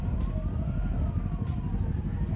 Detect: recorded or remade recorded